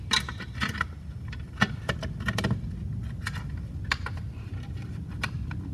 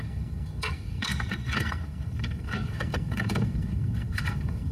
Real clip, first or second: first